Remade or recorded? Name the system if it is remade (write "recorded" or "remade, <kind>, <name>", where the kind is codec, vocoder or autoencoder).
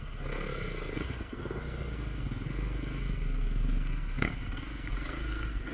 remade, codec, SNAC